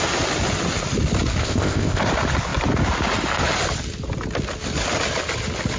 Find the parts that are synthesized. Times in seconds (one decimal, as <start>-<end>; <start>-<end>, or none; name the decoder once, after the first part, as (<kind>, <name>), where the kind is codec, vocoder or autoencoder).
1.4-2.0 (codec, ZipCodec)